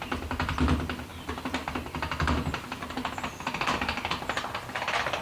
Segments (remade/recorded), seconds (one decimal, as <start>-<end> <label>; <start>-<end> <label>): 0.0-5.2 recorded